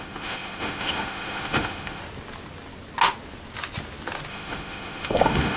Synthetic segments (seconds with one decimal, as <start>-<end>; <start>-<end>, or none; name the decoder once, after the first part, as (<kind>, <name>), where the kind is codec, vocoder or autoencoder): 0.0-2.0 (autoencoder, DAC-VAE); 4.3-5.6